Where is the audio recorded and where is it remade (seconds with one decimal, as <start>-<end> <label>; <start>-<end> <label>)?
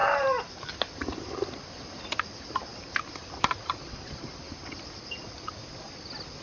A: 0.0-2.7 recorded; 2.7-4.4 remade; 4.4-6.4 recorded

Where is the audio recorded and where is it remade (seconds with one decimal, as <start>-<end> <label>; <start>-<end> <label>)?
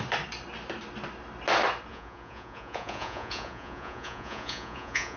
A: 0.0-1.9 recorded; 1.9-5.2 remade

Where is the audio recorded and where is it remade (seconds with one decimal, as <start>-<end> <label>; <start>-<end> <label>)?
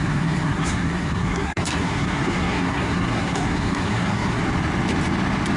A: 0.0-4.4 remade; 4.4-5.6 recorded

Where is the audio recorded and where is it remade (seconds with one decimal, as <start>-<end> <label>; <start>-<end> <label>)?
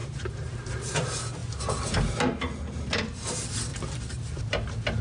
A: 0.0-0.9 remade; 0.9-3.7 recorded; 3.7-4.4 remade; 4.4-5.0 recorded